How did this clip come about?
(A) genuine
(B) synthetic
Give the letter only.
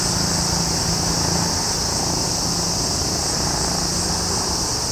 A